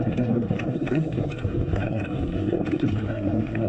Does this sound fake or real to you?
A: fake